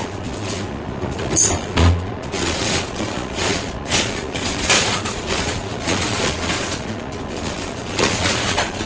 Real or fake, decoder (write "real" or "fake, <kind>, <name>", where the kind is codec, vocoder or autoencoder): fake, vocoder, Vocos